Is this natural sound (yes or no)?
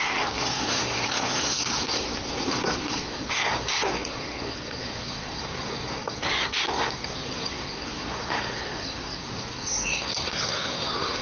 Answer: no